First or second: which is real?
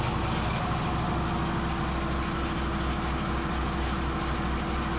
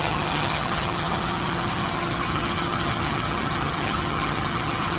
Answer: first